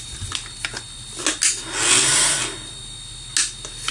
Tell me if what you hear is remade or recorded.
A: recorded